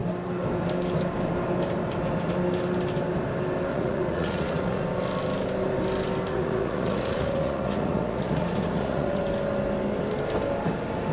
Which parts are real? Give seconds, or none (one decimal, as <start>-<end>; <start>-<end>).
0.0-3.7; 4.8-6.3; 9.2-11.1